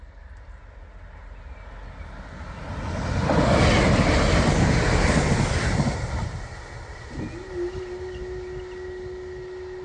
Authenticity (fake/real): real